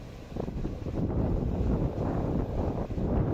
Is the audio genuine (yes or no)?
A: yes